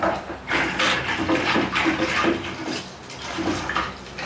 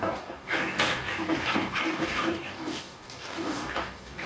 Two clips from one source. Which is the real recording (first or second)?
first